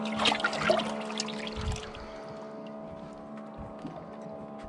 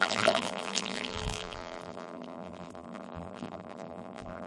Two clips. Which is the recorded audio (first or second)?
first